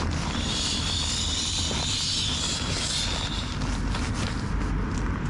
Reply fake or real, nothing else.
real